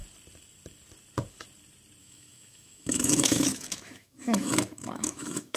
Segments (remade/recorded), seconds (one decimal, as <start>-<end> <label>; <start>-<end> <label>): 0.0-2.0 recorded; 2.0-5.6 remade